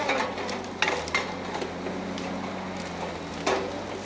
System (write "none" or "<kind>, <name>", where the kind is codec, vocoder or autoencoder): none